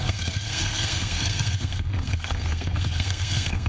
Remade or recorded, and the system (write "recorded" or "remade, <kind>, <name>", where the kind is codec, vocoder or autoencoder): remade, codec, SNAC